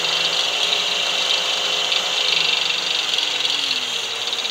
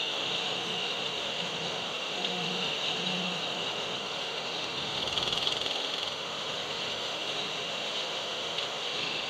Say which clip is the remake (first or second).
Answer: second